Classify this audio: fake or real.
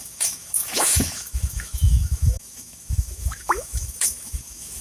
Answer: fake